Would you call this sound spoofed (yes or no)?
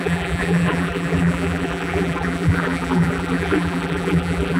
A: yes